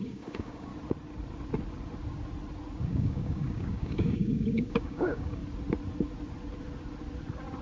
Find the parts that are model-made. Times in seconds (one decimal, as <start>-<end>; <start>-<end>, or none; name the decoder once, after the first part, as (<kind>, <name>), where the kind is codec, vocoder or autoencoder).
0.0-0.7 (codec, DAC); 2.8-5.4